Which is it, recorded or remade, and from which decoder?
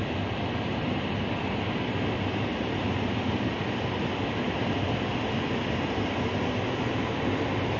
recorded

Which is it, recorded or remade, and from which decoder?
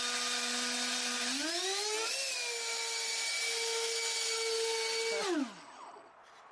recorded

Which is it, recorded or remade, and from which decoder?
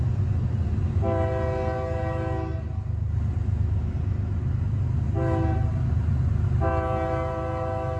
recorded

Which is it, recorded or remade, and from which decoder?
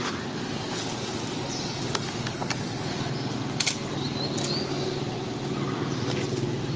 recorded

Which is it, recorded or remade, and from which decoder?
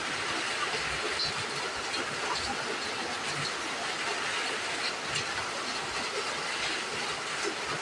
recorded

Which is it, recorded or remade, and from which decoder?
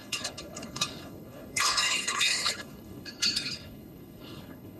remade, codec, HILCodec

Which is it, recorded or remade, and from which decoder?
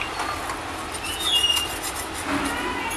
recorded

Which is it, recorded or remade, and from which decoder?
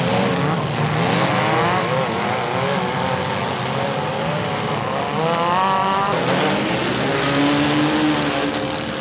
recorded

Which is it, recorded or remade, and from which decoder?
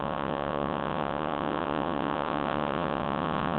remade, vocoder, WaveNeXt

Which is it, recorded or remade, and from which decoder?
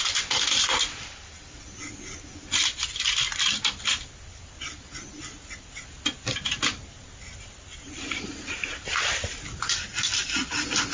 recorded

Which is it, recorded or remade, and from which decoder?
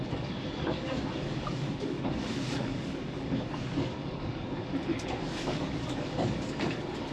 remade, codec, DAC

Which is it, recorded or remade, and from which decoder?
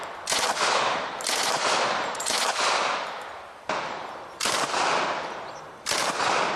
recorded